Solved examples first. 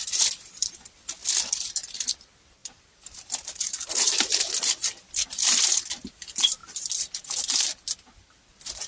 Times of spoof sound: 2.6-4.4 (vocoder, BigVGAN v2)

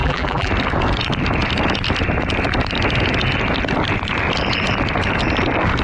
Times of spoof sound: 0.0-0.5 (vocoder, BigVGAN v2)

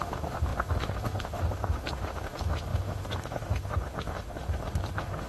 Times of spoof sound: 0.0-5.3 (autoencoder, DAC-VAE)

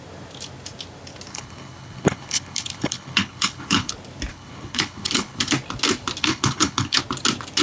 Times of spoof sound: 1.3-3.9 (codec, HILCodec); 4.3-5.5; 6.2-7.0